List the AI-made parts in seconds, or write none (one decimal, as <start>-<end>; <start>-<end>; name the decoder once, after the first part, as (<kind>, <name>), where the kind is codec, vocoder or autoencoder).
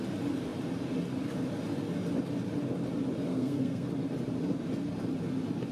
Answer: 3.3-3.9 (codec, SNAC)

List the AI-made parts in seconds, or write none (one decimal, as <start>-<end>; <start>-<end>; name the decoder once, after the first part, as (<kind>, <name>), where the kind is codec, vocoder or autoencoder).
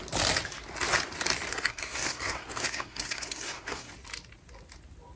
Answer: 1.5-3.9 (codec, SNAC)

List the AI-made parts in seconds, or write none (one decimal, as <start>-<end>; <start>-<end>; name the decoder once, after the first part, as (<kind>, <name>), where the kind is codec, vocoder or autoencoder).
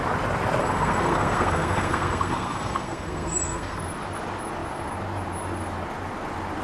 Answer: 0.6-3.8 (codec, SNAC)